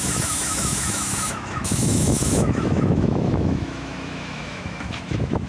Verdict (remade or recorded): remade